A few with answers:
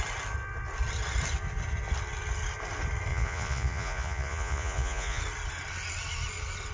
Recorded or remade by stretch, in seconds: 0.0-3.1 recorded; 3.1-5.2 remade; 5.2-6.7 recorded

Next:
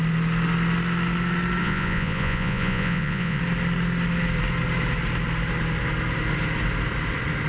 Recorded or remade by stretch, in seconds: 0.0-1.6 recorded; 1.6-3.4 remade; 3.4-7.5 recorded

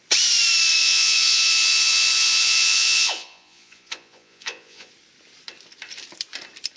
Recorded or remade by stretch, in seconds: 0.0-0.8 recorded; 0.8-4.9 remade; 4.9-6.8 recorded

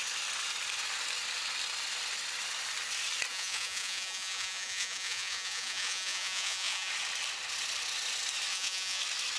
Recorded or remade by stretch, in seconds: 0.0-3.3 recorded; 3.3-6.9 remade; 6.9-8.5 recorded; 8.5-9.0 remade; 9.0-9.4 recorded

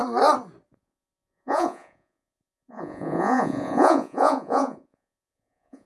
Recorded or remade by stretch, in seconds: 0.0-0.7 recorded; 0.7-5.9 remade

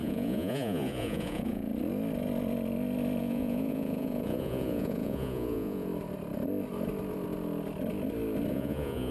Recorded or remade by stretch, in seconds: 0.0-1.7 remade; 1.7-3.2 recorded; 3.2-5.9 remade; 5.9-8.5 recorded; 8.5-9.1 remade

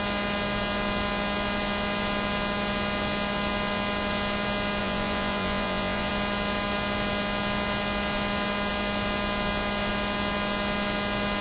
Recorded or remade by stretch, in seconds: 0.0-4.8 recorded; 4.8-6.1 remade; 6.1-11.4 recorded